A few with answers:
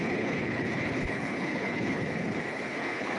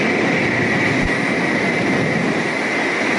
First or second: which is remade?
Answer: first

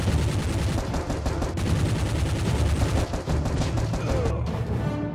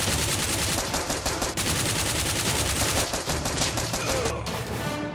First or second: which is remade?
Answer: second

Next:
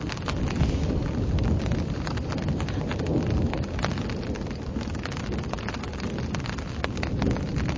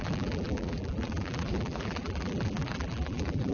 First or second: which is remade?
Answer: second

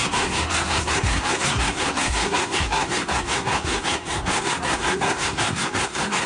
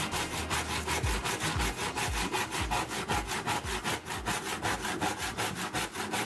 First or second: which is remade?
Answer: first